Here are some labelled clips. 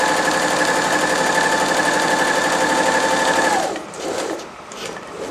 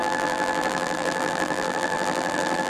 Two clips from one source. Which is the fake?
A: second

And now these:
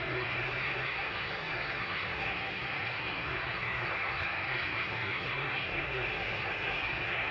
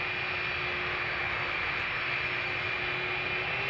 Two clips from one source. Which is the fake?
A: first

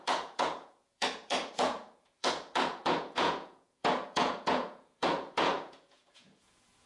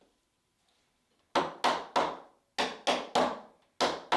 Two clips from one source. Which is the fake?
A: first